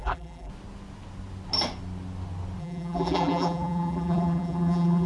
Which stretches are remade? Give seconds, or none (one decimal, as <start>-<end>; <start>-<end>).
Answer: 0.0-0.5; 2.6-5.1